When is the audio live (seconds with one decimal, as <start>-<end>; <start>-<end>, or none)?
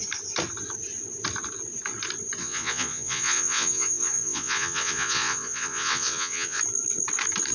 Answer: 0.0-2.4; 6.6-7.5